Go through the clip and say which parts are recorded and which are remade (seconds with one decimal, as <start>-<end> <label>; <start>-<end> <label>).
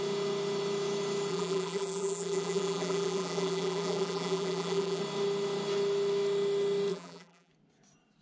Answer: 0.0-1.3 recorded; 1.3-5.0 remade; 5.0-6.9 recorded; 6.9-7.5 remade; 7.5-8.2 recorded